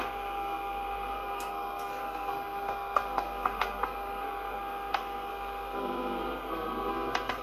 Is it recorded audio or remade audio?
remade